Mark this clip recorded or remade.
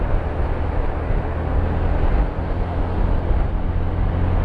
recorded